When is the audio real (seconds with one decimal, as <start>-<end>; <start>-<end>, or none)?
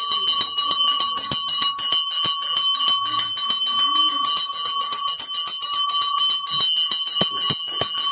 0.0-8.1